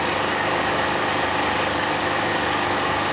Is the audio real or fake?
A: fake